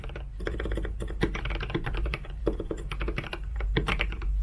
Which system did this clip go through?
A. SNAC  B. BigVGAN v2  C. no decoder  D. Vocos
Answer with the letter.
B